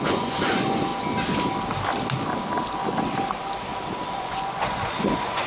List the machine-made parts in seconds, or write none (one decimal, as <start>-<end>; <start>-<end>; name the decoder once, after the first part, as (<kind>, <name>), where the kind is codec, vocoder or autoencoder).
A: 0.0-0.9 (vocoder, Vocos); 4.2-5.5